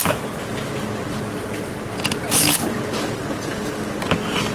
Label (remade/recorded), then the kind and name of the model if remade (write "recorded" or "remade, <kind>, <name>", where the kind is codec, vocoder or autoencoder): recorded